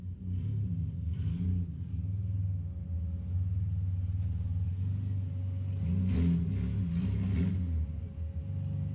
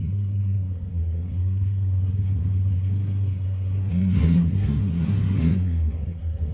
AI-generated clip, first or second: second